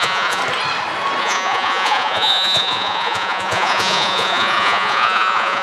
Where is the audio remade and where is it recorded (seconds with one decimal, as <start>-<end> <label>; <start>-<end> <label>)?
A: 0.0-0.4 remade; 0.4-1.2 recorded; 1.2-5.6 remade